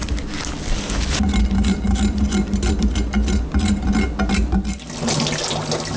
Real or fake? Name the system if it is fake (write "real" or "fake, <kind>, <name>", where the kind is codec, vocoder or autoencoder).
real